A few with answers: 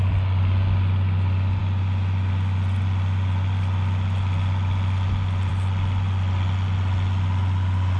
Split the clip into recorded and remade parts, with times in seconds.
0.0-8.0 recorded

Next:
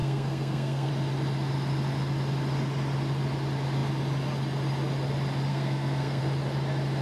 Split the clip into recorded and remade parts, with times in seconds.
0.0-0.9 remade; 0.9-5.5 recorded; 5.5-6.2 remade; 6.2-7.0 recorded